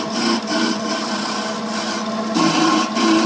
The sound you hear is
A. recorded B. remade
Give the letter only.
A